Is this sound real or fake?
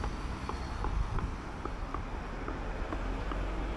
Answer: real